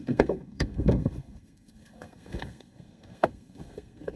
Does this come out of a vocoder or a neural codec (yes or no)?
yes